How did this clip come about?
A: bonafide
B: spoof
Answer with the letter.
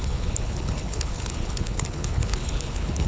B